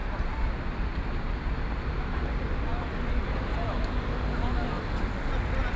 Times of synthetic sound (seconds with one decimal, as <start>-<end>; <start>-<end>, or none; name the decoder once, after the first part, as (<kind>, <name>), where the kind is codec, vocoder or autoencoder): 0.9-2.0 (vocoder, BigVGAN v2)